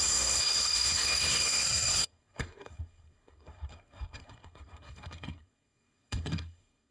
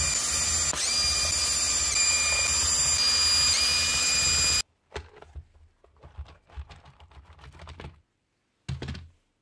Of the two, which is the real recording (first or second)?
second